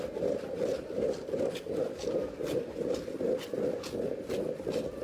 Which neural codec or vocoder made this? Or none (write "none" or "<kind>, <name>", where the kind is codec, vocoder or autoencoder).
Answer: none